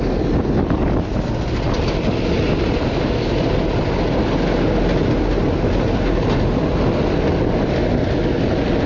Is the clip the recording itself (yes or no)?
yes